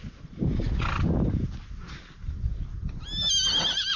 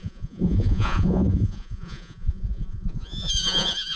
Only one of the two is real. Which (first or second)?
first